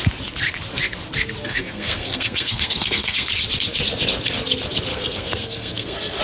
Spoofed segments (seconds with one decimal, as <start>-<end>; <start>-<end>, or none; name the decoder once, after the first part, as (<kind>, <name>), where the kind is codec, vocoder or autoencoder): 1.4-3.3 (codec, SNAC); 4.9-6.2